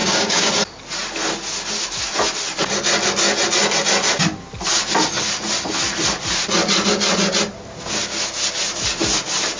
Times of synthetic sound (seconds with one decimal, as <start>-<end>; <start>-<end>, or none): 0.0-0.5